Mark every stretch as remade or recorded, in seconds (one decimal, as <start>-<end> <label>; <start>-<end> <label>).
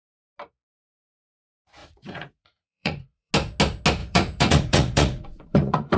0.0-1.8 recorded; 1.8-3.3 remade; 3.3-4.0 recorded; 4.0-6.0 remade